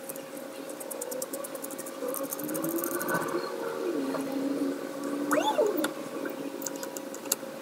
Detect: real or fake real